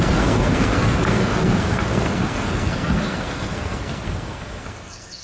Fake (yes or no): yes